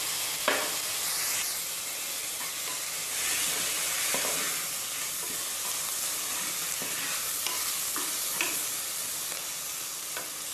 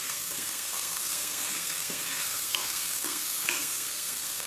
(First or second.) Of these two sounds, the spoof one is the second